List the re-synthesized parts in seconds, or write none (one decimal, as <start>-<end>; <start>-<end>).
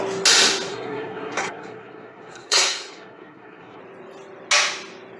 0.7-3.8